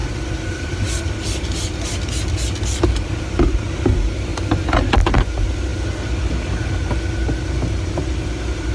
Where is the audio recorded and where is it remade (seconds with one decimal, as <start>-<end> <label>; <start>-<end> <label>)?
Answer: 0.0-4.3 recorded; 4.3-4.9 remade; 4.9-8.7 recorded